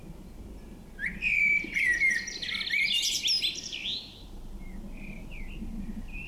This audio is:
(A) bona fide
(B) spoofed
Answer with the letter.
A